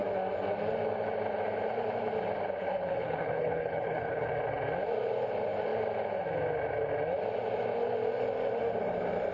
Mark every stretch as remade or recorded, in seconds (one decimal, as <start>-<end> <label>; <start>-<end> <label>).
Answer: 0.0-2.6 recorded; 2.6-4.3 remade; 4.3-9.3 recorded